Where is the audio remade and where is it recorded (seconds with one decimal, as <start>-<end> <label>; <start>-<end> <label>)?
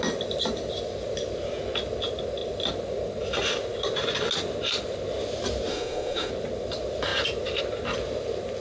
0.0-5.7 recorded; 5.7-6.3 remade; 6.3-8.6 recorded